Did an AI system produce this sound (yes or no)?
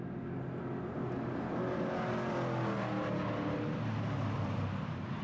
no